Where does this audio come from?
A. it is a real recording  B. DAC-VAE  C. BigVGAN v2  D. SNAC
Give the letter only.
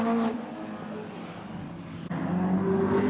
A